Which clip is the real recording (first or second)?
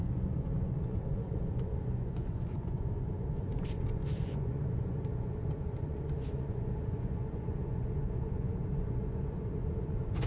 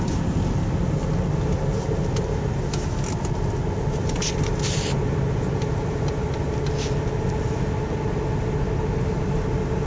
second